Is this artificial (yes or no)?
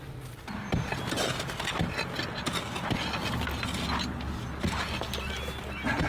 no